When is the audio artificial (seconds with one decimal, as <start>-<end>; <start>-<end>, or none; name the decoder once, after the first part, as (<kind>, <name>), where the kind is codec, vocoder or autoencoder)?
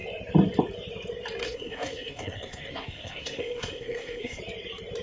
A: 1.4-4.4 (codec, SNAC)